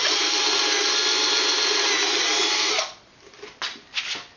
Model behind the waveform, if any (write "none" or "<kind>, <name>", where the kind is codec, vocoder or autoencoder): none